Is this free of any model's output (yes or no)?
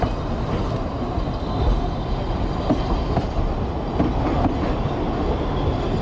yes